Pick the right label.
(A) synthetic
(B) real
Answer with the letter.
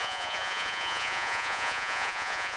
A